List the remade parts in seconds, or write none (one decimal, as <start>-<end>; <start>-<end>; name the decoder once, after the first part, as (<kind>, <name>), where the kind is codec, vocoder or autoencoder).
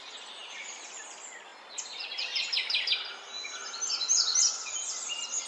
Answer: none